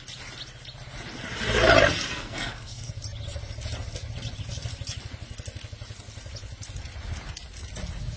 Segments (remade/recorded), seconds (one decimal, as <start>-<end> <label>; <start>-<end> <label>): 0.0-2.1 recorded; 2.1-2.9 remade; 2.9-8.2 recorded

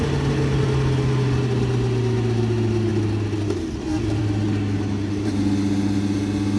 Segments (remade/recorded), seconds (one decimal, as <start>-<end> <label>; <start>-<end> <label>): 0.0-6.6 recorded

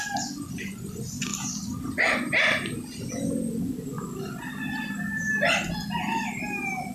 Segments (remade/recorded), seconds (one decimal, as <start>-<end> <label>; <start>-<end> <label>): 0.0-6.9 recorded

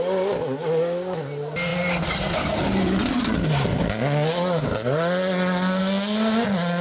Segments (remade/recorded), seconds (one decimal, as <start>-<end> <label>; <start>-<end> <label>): 0.0-6.8 recorded

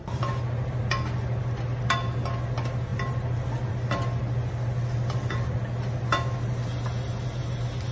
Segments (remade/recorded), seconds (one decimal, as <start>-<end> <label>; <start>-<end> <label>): 0.0-7.9 recorded

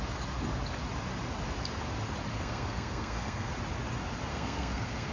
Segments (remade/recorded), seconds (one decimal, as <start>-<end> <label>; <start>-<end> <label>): 0.0-2.3 recorded; 2.3-3.5 remade; 3.5-4.3 recorded; 4.3-5.1 remade